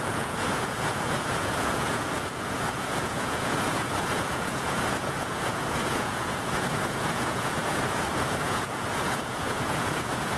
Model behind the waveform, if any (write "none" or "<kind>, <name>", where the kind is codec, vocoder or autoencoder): vocoder, Vocos